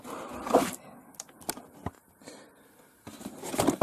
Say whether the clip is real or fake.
real